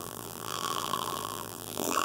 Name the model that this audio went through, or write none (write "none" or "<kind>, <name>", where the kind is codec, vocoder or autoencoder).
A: vocoder, BigVGAN v2